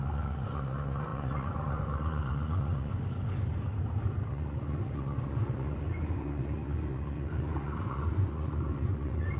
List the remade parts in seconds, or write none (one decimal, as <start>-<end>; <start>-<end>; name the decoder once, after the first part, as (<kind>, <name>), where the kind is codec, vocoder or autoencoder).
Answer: 0.0-2.9 (vocoder, Vocos); 4.3-9.4